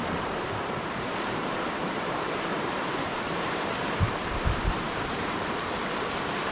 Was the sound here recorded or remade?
remade